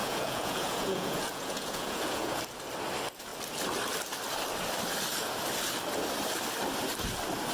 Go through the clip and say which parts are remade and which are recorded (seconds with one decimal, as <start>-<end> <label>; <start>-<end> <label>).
0.0-2.3 remade; 2.3-7.5 recorded